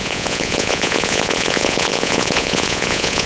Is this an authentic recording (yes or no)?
no